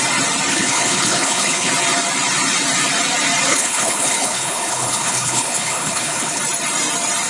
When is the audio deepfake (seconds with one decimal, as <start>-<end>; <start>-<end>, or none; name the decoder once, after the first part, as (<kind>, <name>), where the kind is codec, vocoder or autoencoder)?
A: 0.5-1.7 (codec, HILCodec); 3.5-6.4